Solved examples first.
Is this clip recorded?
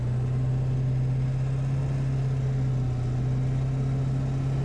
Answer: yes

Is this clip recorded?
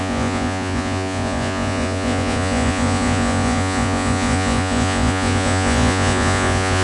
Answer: no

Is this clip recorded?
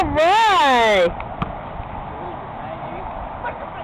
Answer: yes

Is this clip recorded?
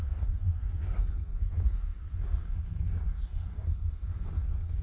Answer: no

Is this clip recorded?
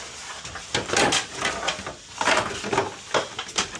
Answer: yes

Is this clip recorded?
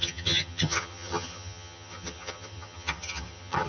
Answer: no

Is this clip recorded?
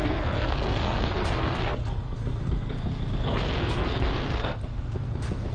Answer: no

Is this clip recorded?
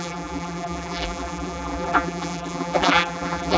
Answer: no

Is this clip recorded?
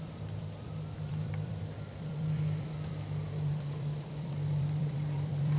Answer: no